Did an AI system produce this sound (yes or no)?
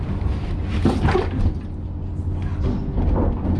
no